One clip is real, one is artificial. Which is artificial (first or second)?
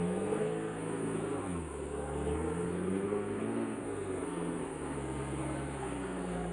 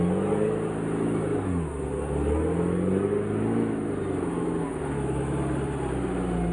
first